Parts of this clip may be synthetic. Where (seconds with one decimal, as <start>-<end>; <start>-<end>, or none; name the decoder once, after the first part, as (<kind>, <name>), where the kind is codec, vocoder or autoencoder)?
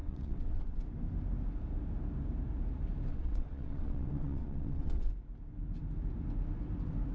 0.0-0.8 (vocoder, WaveNeXt); 3.1-5.1